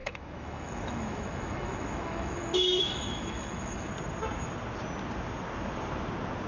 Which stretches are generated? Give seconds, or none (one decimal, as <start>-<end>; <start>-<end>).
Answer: 0.0-3.9